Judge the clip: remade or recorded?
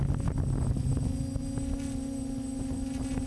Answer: recorded